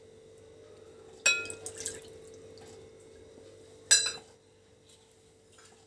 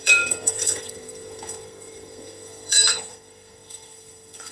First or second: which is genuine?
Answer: first